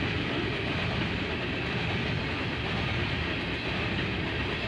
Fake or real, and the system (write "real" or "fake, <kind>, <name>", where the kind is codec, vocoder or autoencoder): real